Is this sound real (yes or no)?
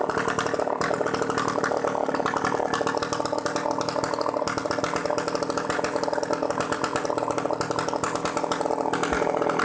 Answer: yes